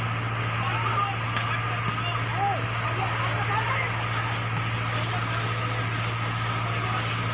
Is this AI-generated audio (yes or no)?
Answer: no